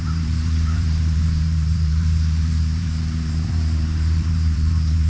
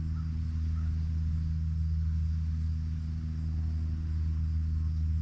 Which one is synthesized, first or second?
first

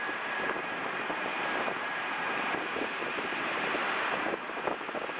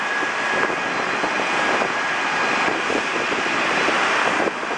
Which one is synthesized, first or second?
first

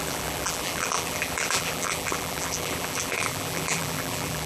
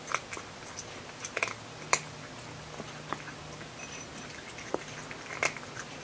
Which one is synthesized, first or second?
first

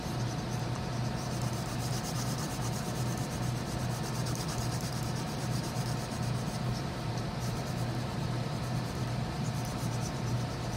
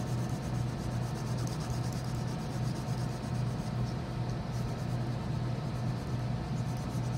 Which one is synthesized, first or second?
first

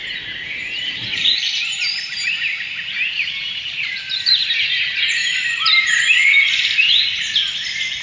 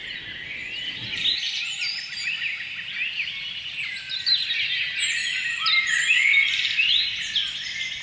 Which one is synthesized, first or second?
first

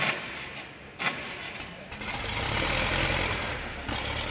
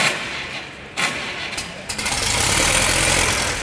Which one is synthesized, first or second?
second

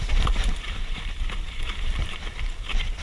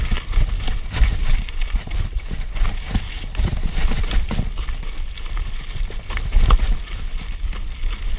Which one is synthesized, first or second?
first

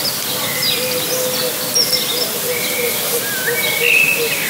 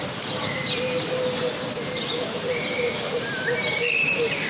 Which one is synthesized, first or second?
second